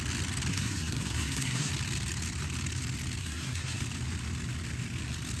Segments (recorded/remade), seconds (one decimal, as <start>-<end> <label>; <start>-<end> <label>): 0.0-0.5 recorded; 0.5-1.7 remade; 1.7-3.2 recorded; 3.2-3.8 remade; 3.8-5.4 recorded